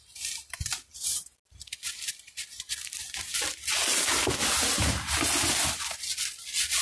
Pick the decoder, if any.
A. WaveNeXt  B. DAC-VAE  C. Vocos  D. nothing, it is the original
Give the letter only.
D